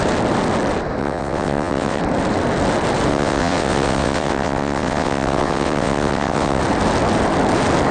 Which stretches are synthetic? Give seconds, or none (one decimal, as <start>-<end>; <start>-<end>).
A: 1.0-2.0; 3.1-6.6